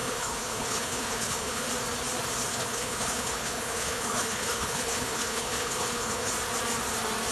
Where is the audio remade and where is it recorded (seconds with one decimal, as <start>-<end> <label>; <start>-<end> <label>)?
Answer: 0.0-1.7 remade; 1.7-2.5 recorded; 2.5-6.3 remade; 6.3-7.3 recorded